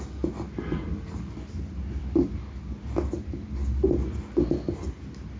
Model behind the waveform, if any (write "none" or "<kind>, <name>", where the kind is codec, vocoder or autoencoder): none